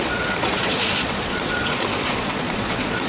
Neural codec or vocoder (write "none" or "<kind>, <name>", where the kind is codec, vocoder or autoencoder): vocoder, Vocos